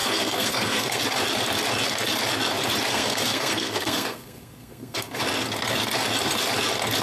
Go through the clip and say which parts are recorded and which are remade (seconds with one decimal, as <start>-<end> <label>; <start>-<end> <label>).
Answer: 0.0-1.0 remade; 1.0-2.9 recorded; 2.9-5.2 remade; 5.2-7.0 recorded